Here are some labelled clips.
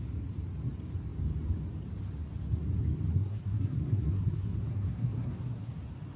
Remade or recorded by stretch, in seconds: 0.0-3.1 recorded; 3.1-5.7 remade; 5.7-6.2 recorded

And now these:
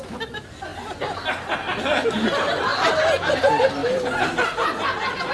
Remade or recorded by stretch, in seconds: 0.0-5.3 recorded

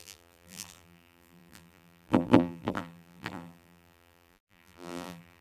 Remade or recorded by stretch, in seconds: 0.0-5.4 remade

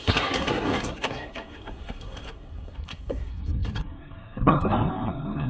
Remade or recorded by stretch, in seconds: 0.0-5.5 remade

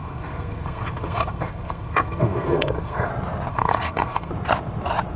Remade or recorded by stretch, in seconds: 0.0-3.1 remade; 3.1-3.5 recorded; 3.5-4.3 remade; 4.3-5.2 recorded